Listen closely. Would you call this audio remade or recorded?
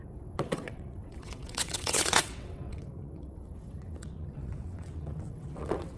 remade